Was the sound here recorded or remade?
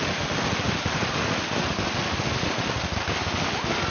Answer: recorded